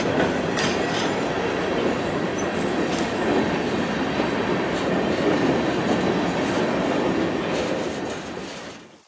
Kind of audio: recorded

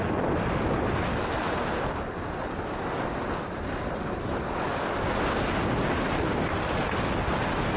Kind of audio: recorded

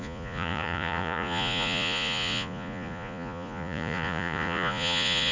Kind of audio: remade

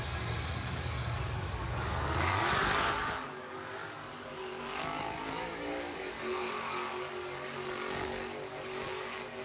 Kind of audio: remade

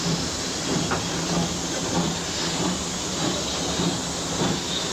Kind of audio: recorded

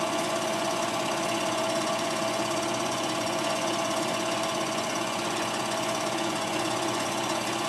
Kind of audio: remade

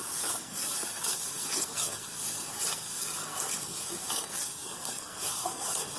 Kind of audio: remade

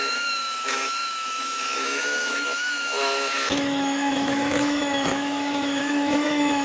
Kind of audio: remade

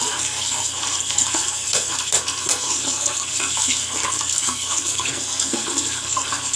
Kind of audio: remade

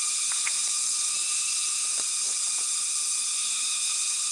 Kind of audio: remade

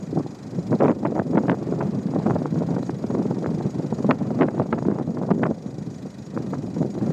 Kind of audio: recorded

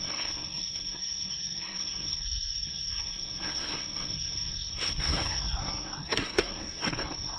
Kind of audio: remade